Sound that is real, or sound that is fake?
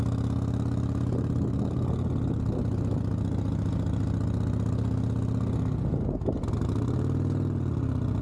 real